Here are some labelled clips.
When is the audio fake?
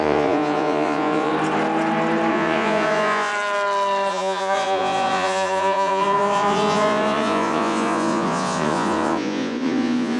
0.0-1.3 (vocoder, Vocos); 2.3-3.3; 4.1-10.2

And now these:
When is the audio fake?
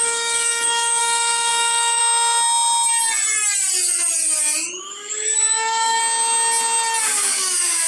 0.0-2.0 (codec, DAC); 4.8-6.0; 7.0-7.9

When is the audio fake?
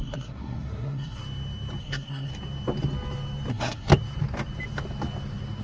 0.0-1.2 (codec, SNAC); 1.8-2.3; 3.5-3.9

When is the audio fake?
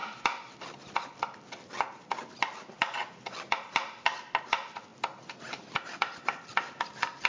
none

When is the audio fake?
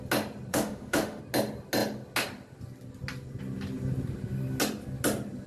0.5-1.2 (autoencoder, DAC-VAE)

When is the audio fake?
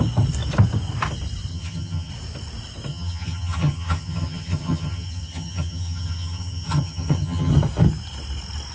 1.5-2.1 (vocoder, HiFi-GAN); 2.9-7.5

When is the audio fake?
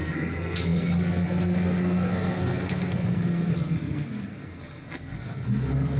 0.0-6.0 (codec, SNAC)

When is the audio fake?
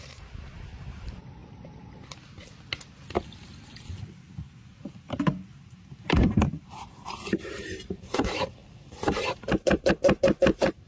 0.0-1.4 (vocoder, BigVGAN v2); 6.0-10.9